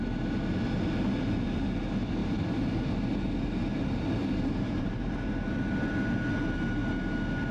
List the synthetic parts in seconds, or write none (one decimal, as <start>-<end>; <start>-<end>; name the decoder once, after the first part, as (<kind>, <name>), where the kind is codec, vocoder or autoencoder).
2.2-2.9 (vocoder, BigVGAN v2); 4.2-5.1

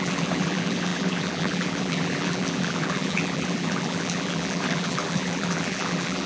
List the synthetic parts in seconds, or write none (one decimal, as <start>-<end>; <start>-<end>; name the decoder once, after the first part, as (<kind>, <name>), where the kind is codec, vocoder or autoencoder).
0.0-6.3 (vocoder, BigVGAN v2)

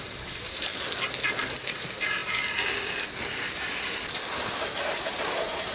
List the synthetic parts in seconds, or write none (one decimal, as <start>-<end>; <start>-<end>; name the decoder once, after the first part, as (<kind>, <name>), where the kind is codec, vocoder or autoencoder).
0.0-0.7 (vocoder, BigVGAN v2); 1.3-2.2; 4.8-5.7

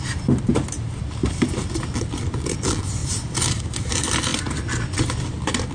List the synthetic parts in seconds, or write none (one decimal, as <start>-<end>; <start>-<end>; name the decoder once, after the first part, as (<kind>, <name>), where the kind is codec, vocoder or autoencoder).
3.0-3.9 (vocoder, BigVGAN v2)

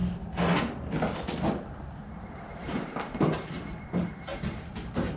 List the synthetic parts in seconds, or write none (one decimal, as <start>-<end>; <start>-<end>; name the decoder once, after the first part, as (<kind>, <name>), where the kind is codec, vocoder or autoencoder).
2.6-3.3 (vocoder, BigVGAN v2); 4.3-5.2